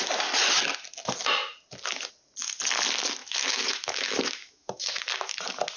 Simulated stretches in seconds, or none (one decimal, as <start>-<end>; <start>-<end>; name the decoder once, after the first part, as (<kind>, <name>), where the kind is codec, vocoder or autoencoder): 3.2-5.0 (autoencoder, DAC-VAE)